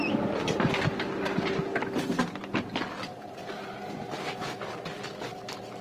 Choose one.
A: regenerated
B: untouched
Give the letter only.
B